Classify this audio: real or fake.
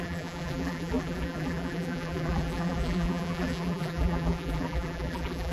fake